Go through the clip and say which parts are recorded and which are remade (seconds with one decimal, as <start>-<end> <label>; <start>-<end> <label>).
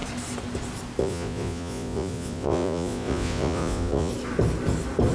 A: 0.0-1.0 recorded; 1.0-4.1 remade; 4.1-5.1 recorded